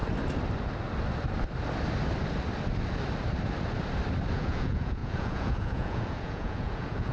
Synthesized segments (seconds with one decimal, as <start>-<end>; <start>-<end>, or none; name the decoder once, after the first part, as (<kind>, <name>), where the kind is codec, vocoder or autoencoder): 4.3-7.1 (vocoder, Vocos)